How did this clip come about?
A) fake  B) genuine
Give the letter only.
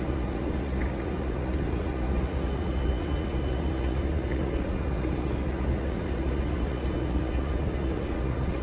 A